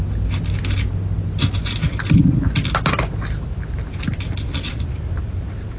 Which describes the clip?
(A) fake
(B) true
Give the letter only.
B